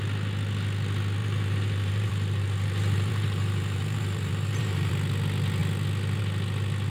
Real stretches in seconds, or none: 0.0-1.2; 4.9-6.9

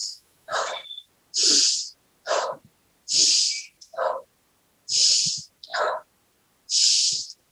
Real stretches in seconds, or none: 0.6-7.5

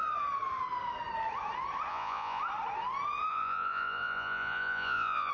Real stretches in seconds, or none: 0.0-1.9; 2.4-3.3

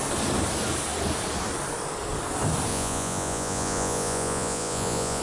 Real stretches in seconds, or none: 0.0-2.7

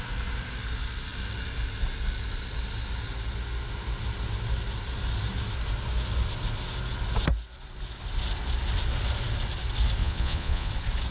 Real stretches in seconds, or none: 0.0-10.0; 10.7-11.1

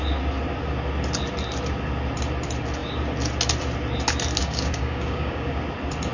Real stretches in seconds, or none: 0.0-4.4; 5.5-6.1

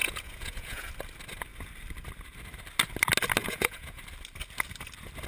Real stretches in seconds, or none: 0.9-3.4; 4.0-5.3

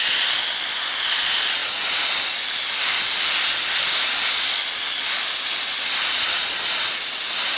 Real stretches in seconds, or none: 0.0-7.6